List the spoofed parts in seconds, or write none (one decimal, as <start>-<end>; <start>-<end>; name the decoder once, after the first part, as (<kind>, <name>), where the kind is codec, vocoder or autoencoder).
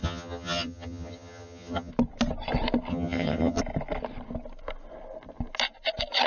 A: 0.0-1.9 (vocoder, HiFi-GAN); 2.9-3.6